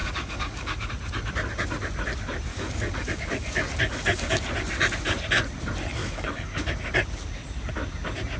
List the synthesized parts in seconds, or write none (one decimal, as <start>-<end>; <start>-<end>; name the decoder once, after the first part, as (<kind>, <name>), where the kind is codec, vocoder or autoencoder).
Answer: 0.0-0.9 (codec, DAC); 2.5-4.3; 6.0-6.7